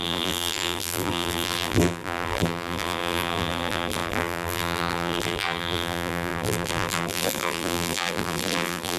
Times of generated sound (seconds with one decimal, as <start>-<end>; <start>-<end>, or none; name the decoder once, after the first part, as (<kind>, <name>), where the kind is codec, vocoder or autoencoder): 0.0-9.0 (vocoder, BigVGAN v2)